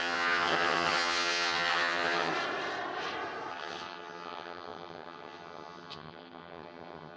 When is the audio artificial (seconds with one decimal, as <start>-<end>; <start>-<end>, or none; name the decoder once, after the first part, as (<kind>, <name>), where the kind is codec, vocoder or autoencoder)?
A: 0.0-2.3 (vocoder, HiFi-GAN); 3.5-7.2